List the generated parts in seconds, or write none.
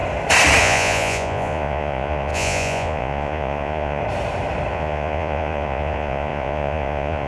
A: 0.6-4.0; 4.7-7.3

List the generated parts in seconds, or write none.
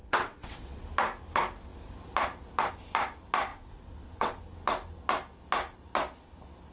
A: 0.0-0.8; 3.5-4.4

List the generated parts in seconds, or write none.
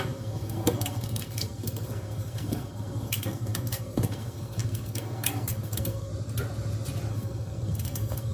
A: 0.0-6.1; 7.1-8.3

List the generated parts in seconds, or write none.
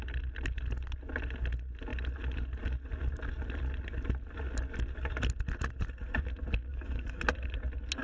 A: 6.7-7.2